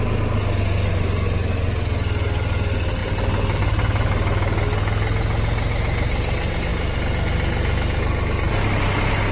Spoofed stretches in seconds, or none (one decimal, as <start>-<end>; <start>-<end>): none